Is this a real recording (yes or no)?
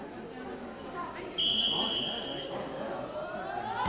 yes